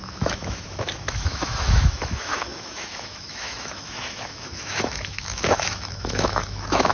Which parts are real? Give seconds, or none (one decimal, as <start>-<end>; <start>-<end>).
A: none